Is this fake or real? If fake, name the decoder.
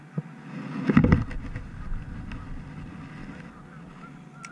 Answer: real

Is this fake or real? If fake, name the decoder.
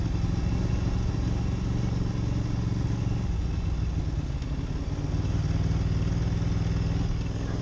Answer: real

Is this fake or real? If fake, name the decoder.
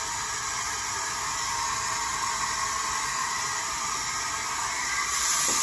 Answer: real